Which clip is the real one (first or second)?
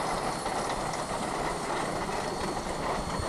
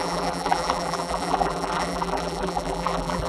first